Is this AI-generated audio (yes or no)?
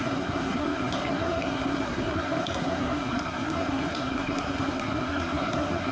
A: yes